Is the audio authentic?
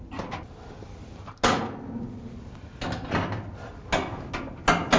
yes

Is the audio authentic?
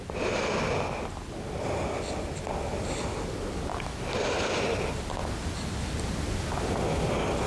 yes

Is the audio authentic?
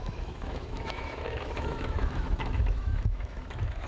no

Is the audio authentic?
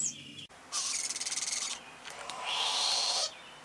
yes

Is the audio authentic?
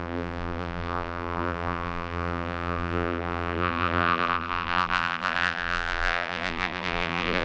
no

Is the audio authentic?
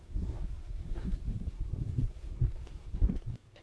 no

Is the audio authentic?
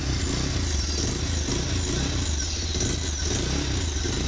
yes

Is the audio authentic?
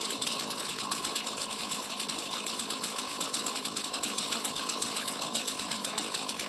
no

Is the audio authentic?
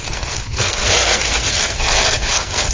no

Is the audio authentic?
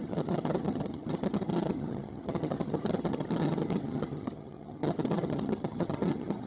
no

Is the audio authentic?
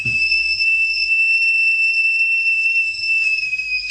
no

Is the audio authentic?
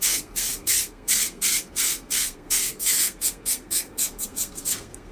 no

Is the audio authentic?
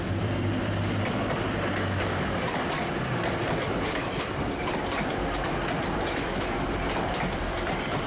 no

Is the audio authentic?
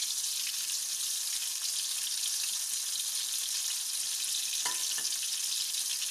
yes